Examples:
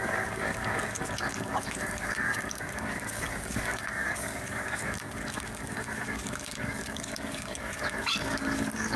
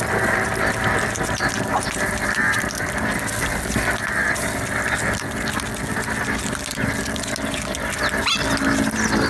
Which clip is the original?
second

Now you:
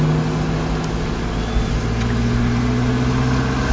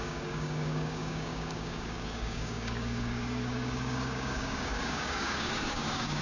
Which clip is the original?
first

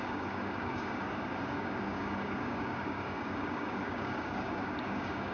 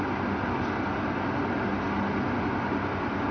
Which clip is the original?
second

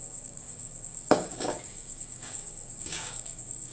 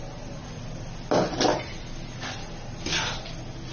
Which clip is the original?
second